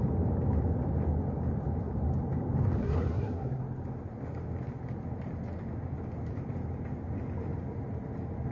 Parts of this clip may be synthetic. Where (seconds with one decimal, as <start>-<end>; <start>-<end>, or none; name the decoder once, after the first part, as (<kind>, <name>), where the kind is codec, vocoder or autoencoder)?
2.8-3.6 (codec, SNAC)